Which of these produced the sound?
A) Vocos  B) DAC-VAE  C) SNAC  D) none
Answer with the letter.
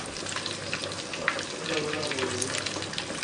D